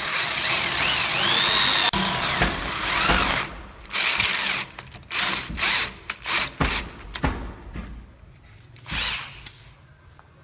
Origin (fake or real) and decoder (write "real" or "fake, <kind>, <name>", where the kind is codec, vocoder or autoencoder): real